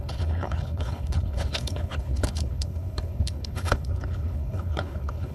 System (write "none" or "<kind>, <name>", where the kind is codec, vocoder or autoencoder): codec, HILCodec